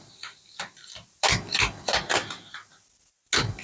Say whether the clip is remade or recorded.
recorded